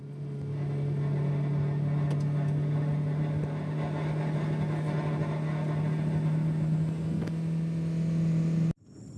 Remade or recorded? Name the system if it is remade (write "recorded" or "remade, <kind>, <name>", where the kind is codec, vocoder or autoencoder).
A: recorded